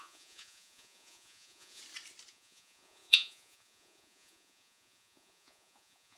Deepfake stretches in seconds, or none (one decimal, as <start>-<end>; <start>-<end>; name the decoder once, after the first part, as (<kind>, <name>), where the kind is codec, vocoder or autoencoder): 0.0-1.8 (vocoder, Vocos); 2.3-6.2